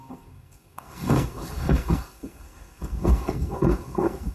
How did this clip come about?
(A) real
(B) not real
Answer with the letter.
B